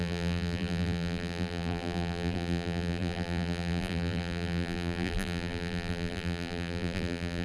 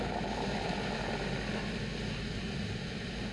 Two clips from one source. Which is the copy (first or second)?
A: first